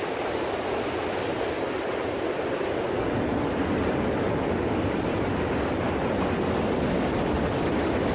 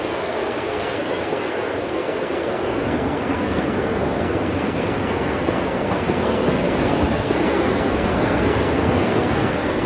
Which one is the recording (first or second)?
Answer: first